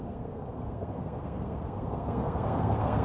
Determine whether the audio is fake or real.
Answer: fake